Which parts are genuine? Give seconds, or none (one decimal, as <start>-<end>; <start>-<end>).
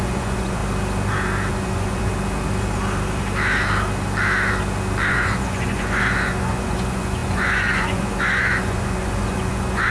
0.6-1.5; 2.1-5.1